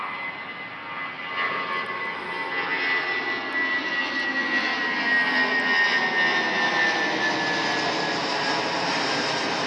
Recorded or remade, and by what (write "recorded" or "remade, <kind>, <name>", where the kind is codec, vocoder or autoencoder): recorded